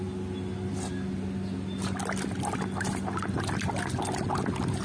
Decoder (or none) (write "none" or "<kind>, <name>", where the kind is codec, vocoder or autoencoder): none